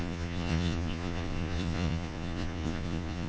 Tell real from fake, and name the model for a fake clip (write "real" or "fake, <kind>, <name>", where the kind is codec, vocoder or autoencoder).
fake, vocoder, Vocos